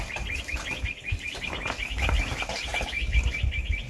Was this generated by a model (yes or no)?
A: no